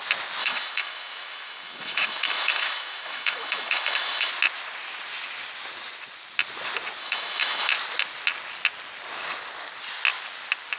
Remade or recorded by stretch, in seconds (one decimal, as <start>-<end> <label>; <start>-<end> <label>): 0.0-0.4 recorded; 0.4-4.3 remade; 4.3-7.0 recorded; 7.0-7.7 remade; 7.7-10.8 recorded